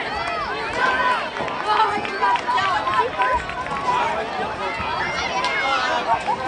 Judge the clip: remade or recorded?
recorded